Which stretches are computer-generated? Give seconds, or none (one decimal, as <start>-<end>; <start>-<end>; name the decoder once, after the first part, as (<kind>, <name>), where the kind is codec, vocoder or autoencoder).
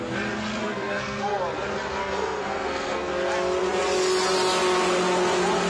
0.6-1.4 (codec, SNAC); 2.0-3.1